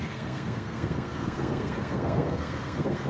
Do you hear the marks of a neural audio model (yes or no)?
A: yes